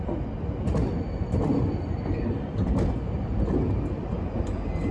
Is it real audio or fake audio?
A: real